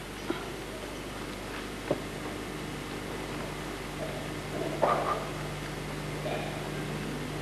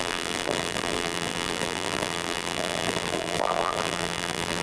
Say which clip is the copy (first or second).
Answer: second